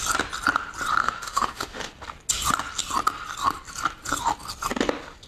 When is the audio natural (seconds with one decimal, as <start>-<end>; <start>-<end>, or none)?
0.0-1.0; 1.9-5.3